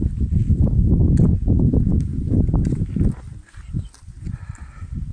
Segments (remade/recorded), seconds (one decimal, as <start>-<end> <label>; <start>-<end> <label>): 0.0-5.1 recorded